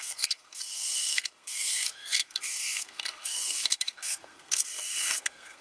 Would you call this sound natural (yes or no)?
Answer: no